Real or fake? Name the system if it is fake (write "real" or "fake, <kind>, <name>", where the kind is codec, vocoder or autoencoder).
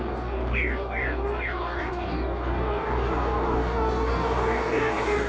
fake, codec, DAC